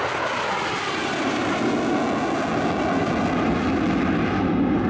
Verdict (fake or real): real